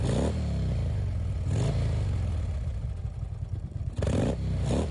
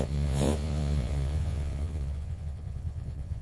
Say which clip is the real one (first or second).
first